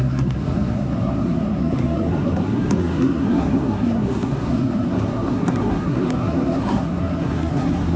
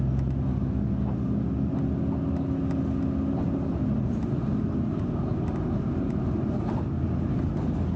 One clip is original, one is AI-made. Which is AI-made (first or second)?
first